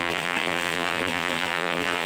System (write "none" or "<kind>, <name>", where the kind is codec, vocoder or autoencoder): vocoder, BigVGAN v2